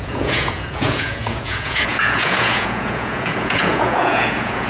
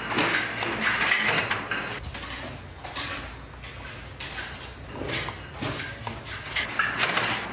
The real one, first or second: second